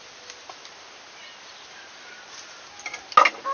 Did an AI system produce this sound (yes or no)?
no